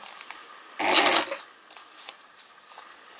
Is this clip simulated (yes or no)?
no